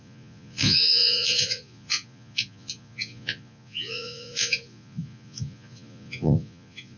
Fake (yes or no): yes